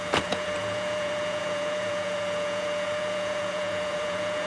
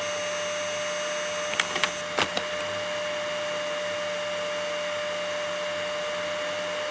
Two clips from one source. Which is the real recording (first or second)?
second